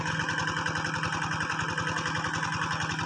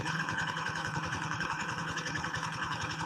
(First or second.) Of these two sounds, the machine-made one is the second